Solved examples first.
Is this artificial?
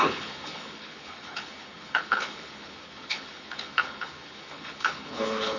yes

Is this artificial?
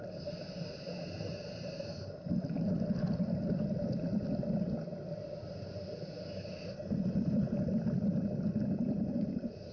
no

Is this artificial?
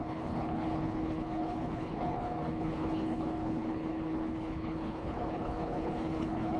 yes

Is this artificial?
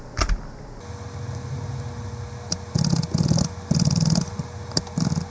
no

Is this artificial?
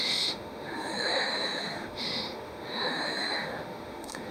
yes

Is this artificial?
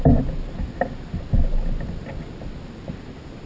no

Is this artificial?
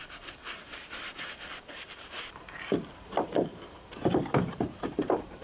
yes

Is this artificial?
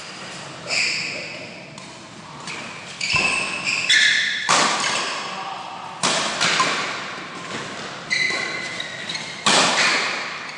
no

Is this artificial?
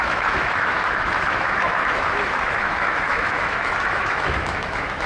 yes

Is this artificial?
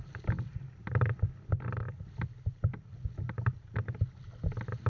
no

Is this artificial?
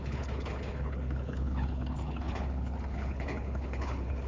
yes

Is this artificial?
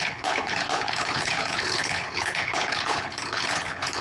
yes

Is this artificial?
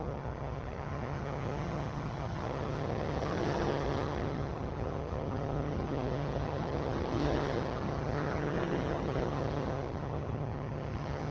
yes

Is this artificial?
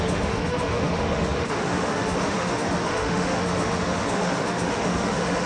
yes